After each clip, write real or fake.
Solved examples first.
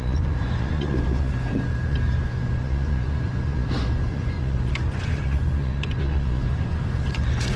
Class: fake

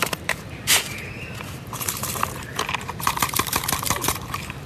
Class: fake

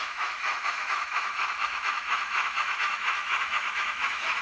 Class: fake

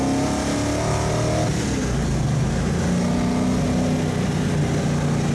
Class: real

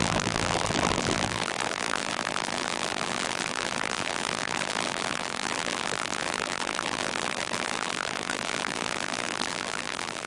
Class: fake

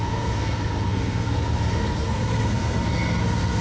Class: fake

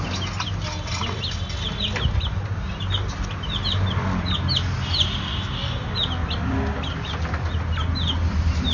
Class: real